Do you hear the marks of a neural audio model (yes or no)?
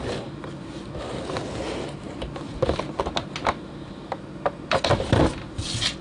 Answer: no